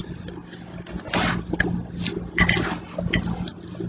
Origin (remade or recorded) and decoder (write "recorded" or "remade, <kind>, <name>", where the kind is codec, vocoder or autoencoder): recorded